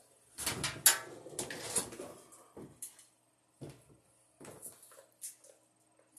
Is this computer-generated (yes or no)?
no